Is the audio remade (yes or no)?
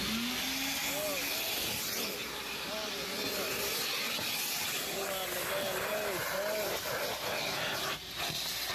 no